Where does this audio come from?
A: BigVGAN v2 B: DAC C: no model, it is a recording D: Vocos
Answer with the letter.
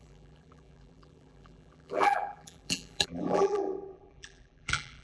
A